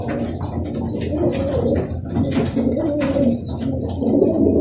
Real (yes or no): yes